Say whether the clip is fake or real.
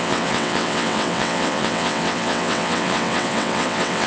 fake